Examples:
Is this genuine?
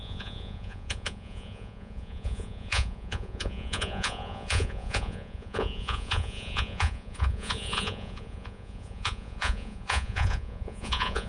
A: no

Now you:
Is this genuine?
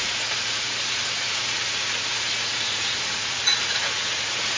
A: no